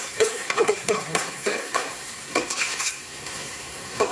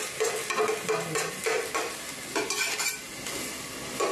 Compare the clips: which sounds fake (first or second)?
first